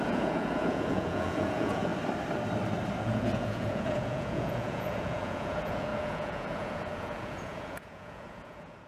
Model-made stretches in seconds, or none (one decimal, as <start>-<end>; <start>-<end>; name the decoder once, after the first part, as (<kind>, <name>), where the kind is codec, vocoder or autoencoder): 0.0-1.9 (vocoder, Vocos); 3.0-8.9